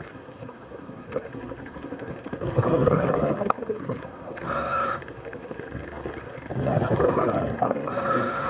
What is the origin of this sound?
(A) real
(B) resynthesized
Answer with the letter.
B